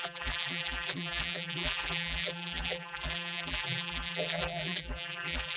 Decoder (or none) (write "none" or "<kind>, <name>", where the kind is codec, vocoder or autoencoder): vocoder, BigVGAN v2